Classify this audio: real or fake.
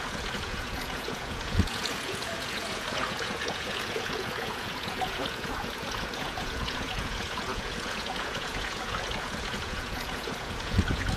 fake